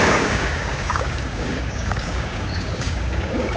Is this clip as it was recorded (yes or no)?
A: no